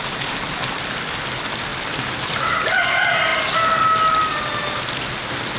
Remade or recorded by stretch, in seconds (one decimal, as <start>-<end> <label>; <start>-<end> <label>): 0.0-5.6 recorded